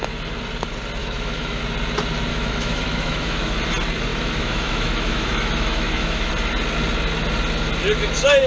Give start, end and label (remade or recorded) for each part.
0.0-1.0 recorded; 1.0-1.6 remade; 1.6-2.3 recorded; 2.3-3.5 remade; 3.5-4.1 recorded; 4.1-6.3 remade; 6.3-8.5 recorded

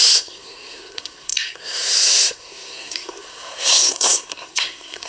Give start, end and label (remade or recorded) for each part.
0.0-5.1 remade

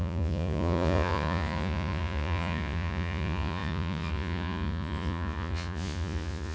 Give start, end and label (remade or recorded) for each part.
0.0-6.5 remade

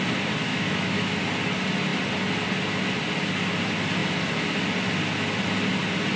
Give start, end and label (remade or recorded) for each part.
0.0-0.5 recorded; 0.5-1.2 remade; 1.2-6.2 recorded

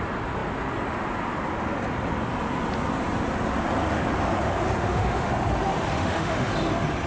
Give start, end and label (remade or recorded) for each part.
0.0-4.8 recorded; 4.8-5.3 remade; 5.3-5.9 recorded; 5.9-6.5 remade; 6.5-7.1 recorded

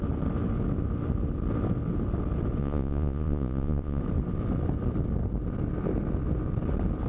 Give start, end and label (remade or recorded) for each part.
0.0-2.6 recorded; 2.6-4.0 remade; 4.0-7.1 recorded

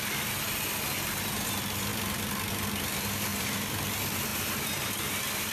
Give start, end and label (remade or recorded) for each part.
0.0-3.3 recorded; 3.3-3.9 remade; 3.9-4.3 recorded; 4.3-4.9 remade; 4.9-5.5 recorded